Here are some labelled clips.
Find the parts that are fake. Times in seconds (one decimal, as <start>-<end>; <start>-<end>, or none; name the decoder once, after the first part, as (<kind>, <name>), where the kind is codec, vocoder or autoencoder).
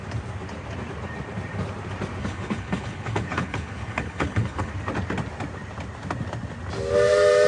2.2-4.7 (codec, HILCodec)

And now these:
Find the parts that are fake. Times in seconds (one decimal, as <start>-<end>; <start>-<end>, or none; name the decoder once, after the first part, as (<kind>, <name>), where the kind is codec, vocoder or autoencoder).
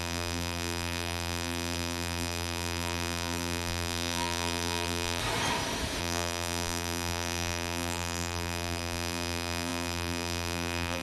0.0-5.2 (vocoder, BigVGAN v2); 6.0-11.0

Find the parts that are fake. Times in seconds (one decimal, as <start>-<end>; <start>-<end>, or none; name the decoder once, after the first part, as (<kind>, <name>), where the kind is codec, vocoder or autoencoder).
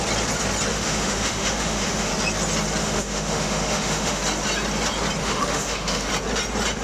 0.7-2.1 (autoencoder, DAC-VAE); 2.8-4.2; 5.2-6.1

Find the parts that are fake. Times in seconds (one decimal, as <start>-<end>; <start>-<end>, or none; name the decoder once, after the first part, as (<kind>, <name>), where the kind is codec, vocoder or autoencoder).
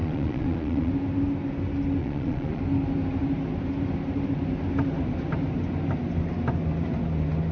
0.0-0.9 (vocoder, Vocos); 2.0-2.6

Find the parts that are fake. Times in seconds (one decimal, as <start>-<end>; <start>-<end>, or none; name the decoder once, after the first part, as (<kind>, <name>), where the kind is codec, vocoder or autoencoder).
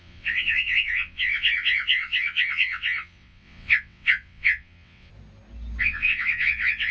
0.0-5.1 (vocoder, WaveNeXt); 5.8-6.9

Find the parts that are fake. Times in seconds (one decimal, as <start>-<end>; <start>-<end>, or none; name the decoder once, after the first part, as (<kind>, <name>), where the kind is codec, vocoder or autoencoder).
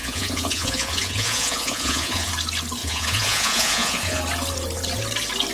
0.0-2.3 (vocoder, Vocos); 2.8-4.2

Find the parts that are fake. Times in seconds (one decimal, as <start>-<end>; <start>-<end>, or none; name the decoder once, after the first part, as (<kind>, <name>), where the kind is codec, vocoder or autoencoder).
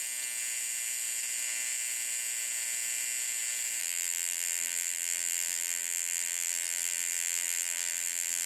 3.8-8.5 (vocoder, BigVGAN v2)